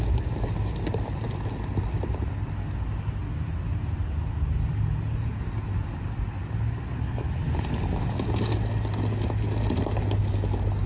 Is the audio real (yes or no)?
yes